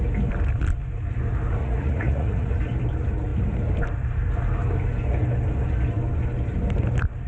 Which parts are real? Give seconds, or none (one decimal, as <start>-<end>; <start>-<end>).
0.0-1.6; 2.5-7.3